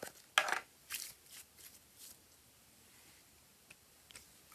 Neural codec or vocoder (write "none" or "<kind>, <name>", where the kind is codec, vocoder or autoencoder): none